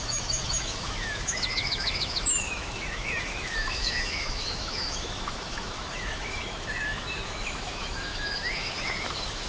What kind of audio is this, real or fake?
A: fake